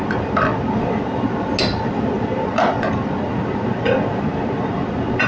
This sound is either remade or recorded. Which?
recorded